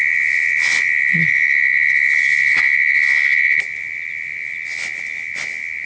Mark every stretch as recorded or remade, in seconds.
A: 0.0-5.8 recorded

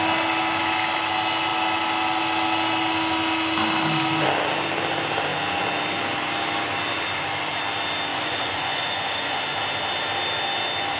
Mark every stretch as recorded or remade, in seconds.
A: 0.0-8.1 recorded; 8.1-9.4 remade; 9.4-11.0 recorded

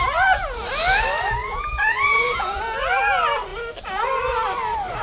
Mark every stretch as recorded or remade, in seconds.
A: 0.0-1.4 recorded; 1.4-2.6 remade; 2.6-5.0 recorded

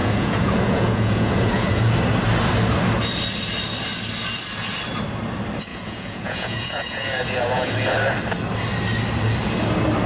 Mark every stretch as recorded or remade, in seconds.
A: 0.0-1.8 remade; 1.8-5.7 recorded; 5.7-7.7 remade; 7.7-10.1 recorded

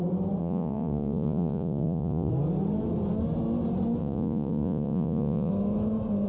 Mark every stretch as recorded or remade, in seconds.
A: 0.0-0.4 recorded; 0.4-2.3 remade; 2.3-4.0 recorded; 4.0-5.5 remade; 5.5-6.3 recorded

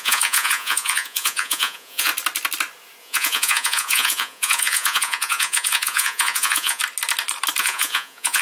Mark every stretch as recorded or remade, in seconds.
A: 0.0-2.1 remade; 2.1-3.0 recorded; 3.0-6.8 remade; 6.8-7.6 recorded; 7.6-8.4 remade

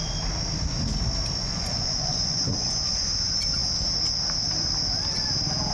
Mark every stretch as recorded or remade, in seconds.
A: 0.0-1.4 recorded; 1.4-3.1 remade; 3.1-5.7 recorded